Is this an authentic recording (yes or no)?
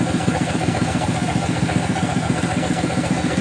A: no